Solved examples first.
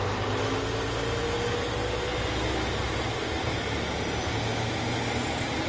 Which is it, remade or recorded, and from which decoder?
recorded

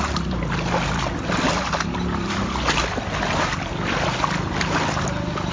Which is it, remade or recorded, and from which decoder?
recorded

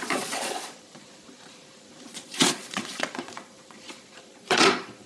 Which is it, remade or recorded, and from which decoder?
remade, vocoder, Vocos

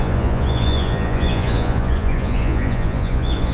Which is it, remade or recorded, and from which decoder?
remade, vocoder, Vocos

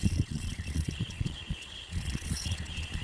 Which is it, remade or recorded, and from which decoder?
remade, vocoder, Vocos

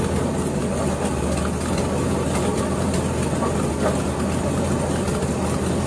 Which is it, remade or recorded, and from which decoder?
recorded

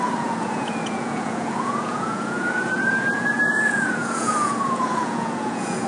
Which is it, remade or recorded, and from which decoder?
remade, vocoder, Vocos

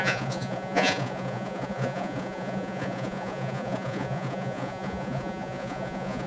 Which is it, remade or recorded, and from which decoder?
remade, vocoder, Vocos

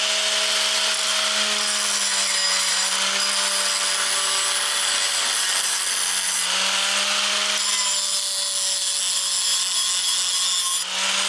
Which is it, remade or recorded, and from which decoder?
recorded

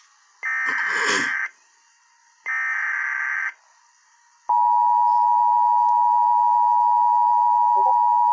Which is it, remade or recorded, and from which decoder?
recorded